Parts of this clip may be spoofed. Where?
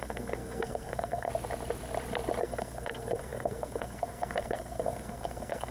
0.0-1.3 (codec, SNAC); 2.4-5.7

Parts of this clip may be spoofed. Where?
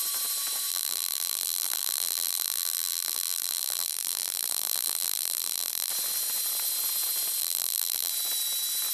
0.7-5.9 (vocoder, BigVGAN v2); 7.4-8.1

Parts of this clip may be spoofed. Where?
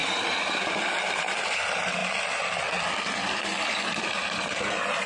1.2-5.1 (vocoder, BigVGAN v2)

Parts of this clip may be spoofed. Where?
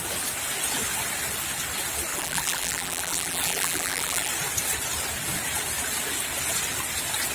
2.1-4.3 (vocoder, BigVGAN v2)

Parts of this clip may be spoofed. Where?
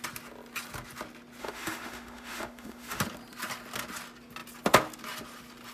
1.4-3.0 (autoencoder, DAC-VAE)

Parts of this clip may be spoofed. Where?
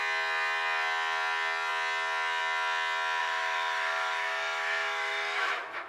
3.2-5.9 (autoencoder, DAC-VAE)